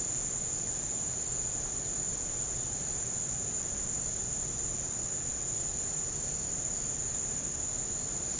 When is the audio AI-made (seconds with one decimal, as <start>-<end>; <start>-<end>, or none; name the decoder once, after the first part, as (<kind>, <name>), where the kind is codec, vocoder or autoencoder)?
none